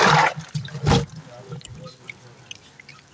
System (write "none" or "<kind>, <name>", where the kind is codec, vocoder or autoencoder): none